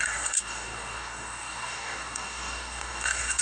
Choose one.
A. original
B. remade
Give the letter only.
B